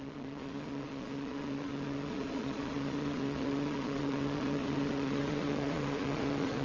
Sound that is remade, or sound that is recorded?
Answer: remade